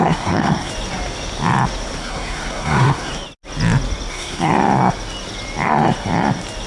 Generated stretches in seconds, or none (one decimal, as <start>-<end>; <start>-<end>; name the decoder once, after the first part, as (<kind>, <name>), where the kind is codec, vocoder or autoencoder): 0.0-0.7 (codec, SNAC); 2.0-3.1; 4.1-4.5